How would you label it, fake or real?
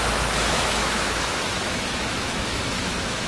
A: fake